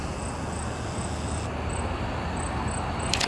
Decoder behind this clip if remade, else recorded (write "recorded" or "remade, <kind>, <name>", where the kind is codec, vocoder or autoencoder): recorded